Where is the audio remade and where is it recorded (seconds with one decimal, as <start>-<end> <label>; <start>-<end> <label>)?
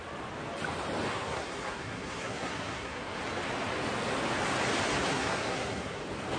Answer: 0.0-1.1 recorded; 1.1-3.2 remade; 3.2-5.1 recorded; 5.1-6.0 remade; 6.0-6.4 recorded